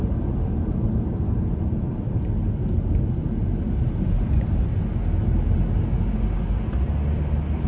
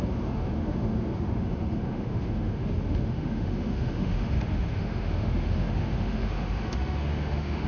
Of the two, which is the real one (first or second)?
first